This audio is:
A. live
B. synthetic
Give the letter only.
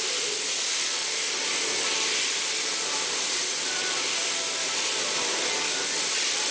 B